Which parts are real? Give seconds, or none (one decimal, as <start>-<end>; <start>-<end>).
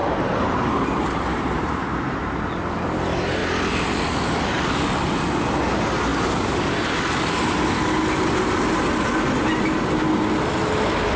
2.3-11.2